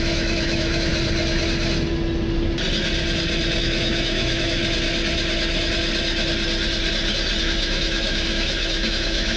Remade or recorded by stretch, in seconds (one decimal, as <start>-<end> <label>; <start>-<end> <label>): 0.0-0.9 remade; 0.9-3.6 recorded; 3.6-4.6 remade; 4.6-7.4 recorded; 7.4-9.4 remade